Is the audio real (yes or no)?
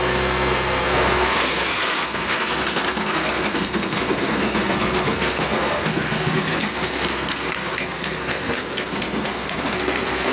no